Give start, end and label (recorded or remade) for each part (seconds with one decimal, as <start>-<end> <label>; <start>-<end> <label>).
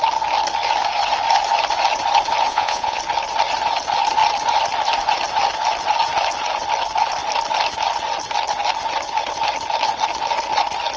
0.0-2.5 recorded; 2.5-3.0 remade; 3.0-11.0 recorded